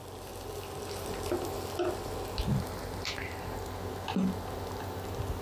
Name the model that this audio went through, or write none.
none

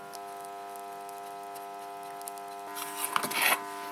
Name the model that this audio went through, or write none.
none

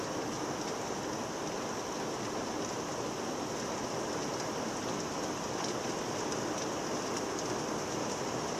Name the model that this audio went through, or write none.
none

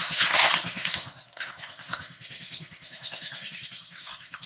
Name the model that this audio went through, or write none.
codec, SNAC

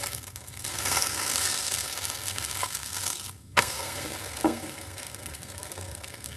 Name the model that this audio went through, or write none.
codec, SNAC